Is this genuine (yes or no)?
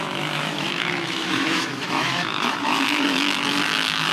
no